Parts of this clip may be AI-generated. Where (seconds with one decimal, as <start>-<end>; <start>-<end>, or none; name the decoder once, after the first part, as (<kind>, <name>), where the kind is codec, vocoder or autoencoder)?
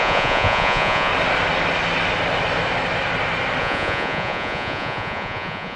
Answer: 0.0-1.1 (vocoder, Vocos); 3.6-5.8